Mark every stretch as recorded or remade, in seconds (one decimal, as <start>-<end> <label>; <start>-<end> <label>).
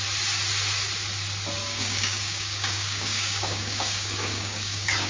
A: 0.0-1.6 recorded; 1.6-5.1 remade